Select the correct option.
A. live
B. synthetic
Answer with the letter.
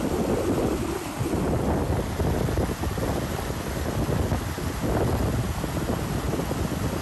A